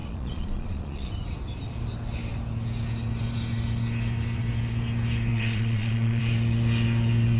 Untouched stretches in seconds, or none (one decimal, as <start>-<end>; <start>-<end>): 1.1-5.3; 6.2-7.4